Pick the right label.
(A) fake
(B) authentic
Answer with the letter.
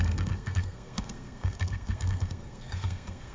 A